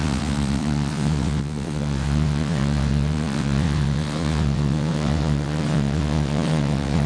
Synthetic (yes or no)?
yes